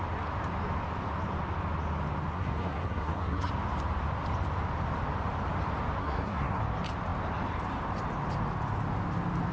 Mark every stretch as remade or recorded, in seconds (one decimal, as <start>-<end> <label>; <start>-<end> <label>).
0.0-2.3 recorded; 2.3-3.5 remade; 3.5-6.0 recorded; 6.0-6.6 remade; 6.6-9.5 recorded